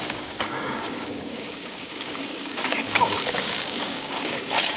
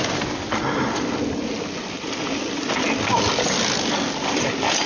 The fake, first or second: first